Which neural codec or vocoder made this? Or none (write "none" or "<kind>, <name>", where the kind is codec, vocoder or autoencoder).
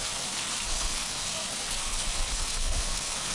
codec, SNAC